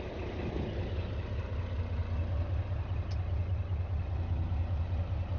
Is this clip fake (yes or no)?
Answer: no